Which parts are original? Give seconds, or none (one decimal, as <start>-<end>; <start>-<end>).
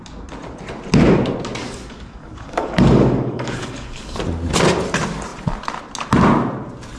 0.0-1.6; 4.2-7.0